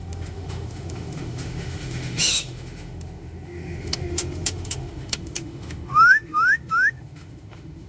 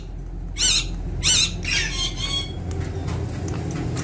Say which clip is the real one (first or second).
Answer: second